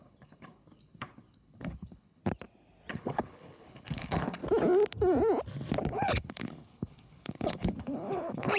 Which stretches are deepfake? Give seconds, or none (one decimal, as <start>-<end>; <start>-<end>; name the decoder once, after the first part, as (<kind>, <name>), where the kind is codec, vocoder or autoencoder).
0.0-2.2 (codec, HILCodec); 2.9-4.4; 5.9-8.6